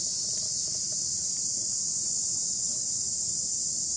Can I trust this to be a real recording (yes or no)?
yes